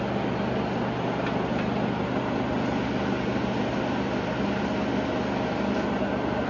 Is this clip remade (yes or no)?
no